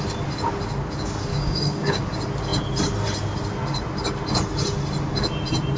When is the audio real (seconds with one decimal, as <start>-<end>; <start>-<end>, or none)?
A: 0.0-1.3; 2.0-5.8